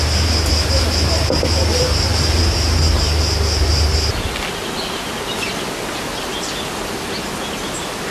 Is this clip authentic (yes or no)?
yes